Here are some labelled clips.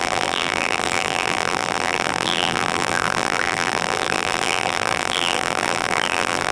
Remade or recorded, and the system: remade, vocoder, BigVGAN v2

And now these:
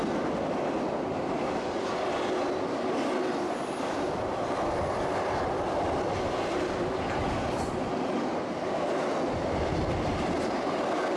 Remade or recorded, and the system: recorded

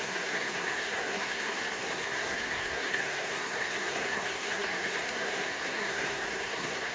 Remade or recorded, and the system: remade, codec, SNAC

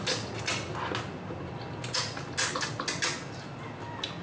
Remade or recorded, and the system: recorded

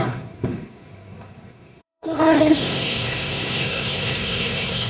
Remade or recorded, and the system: remade, codec, SNAC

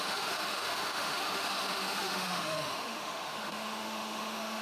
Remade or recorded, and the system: remade, autoencoder, DAC-VAE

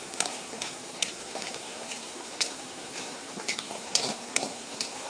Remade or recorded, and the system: remade, codec, SNAC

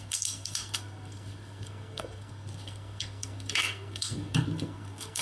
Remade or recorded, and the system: remade, codec, SNAC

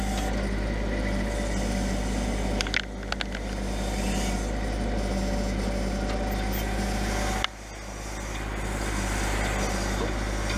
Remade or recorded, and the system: recorded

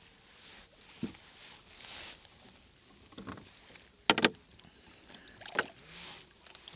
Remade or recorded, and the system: recorded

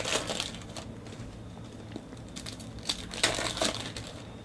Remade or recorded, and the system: recorded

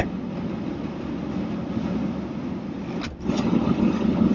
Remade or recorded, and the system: recorded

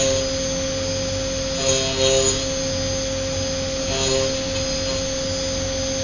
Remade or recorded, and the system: recorded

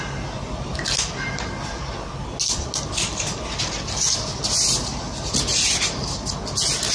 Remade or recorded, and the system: recorded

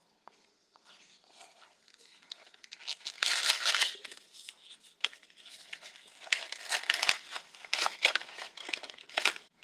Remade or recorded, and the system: remade, codec, SNAC